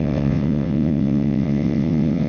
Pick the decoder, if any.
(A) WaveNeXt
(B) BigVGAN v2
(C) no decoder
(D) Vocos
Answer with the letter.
A